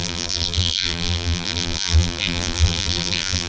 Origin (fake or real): fake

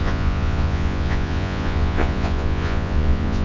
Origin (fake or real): fake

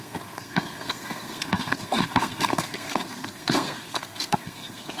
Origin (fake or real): fake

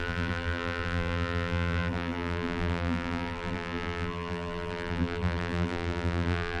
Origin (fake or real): fake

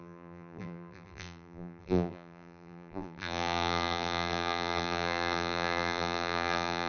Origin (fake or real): fake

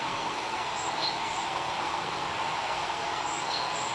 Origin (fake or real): fake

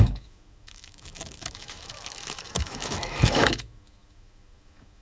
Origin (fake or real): fake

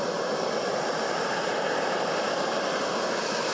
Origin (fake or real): real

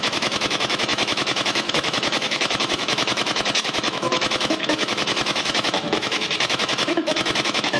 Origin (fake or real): fake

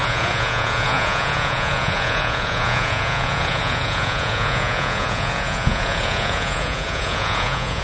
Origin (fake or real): fake